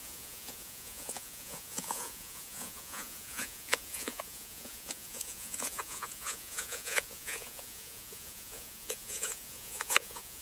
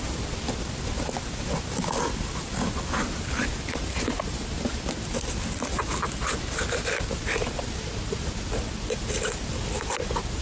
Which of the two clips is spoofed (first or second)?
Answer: first